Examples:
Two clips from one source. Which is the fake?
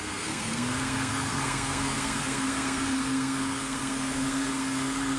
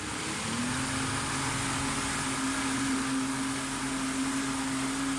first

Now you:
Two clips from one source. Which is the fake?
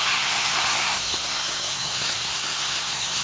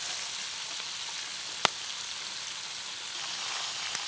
first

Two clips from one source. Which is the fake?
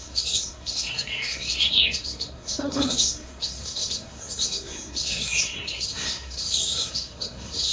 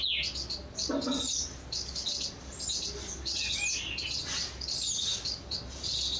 first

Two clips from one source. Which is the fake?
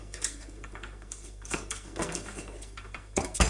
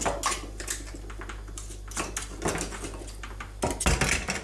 first